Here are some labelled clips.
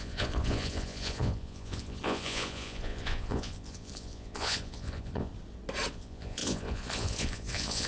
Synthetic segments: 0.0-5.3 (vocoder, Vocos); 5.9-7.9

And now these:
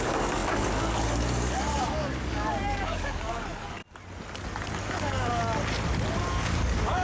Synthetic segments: 0.0-3.8 (codec, DAC); 4.8-5.4; 6.1-7.0

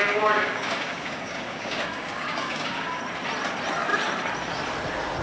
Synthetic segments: 0.0-3.0 (codec, DAC)

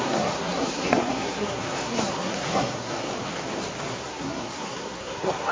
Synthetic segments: 0.0-3.1 (codec, SNAC); 3.9-5.5

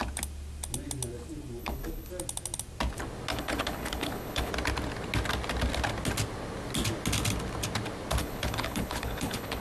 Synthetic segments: 1.6-2.1 (codec, HILCodec); 3.3-4.5; 8.2-9.6

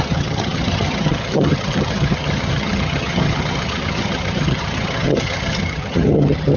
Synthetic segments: 0.0-6.6 (vocoder, HiFi-GAN)

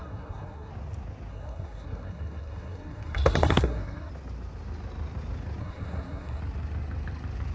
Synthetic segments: 0.0-0.7 (codec, SNAC); 1.3-4.1; 5.6-6.4

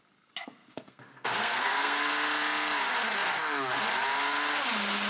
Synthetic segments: 0.6-2.1 (codec, SNAC)